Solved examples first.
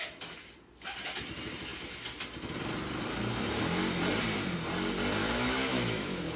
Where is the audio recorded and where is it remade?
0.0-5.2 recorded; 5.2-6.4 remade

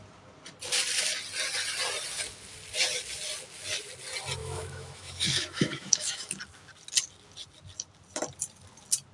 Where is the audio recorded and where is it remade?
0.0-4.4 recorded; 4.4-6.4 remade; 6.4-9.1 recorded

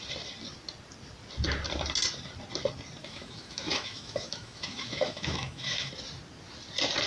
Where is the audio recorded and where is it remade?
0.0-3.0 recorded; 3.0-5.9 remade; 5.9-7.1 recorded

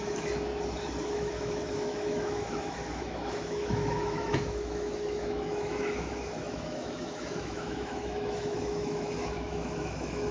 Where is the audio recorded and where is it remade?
0.0-0.5 remade; 0.5-1.1 recorded; 1.1-10.3 remade

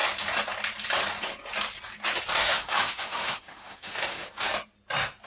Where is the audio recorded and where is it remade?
0.0-2.4 recorded; 2.4-4.3 remade; 4.3-5.3 recorded